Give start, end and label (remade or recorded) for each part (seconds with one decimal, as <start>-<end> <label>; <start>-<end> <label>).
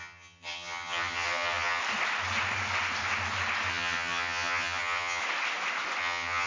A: 0.0-1.8 remade; 1.8-3.7 recorded; 3.7-5.2 remade; 5.2-6.0 recorded; 6.0-6.5 remade